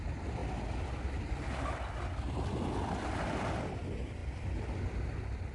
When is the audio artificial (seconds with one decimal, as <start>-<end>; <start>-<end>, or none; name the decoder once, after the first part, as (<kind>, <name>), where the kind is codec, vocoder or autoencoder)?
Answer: 0.4-1.4 (vocoder, BigVGAN v2); 4.2-4.8